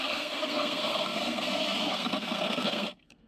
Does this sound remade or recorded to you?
remade